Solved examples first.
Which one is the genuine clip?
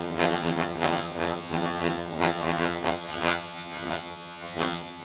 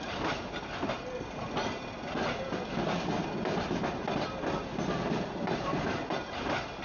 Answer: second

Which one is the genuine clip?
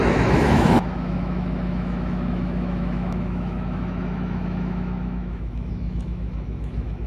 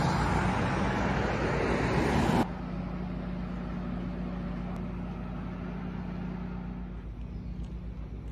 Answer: second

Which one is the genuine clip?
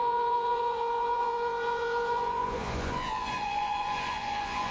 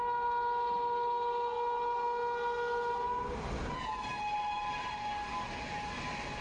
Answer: second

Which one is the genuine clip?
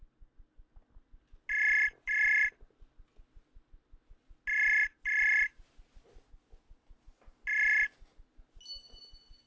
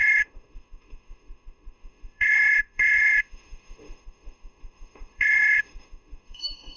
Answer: first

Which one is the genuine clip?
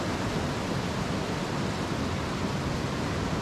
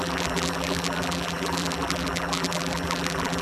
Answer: first